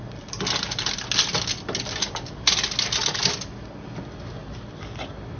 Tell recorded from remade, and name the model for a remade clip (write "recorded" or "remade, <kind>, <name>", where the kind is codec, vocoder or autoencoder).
recorded